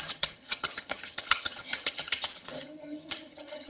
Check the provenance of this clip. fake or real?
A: fake